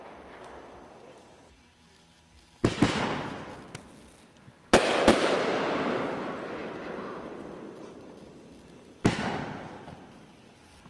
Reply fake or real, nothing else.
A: real